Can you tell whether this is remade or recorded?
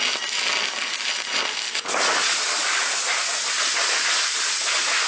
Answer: recorded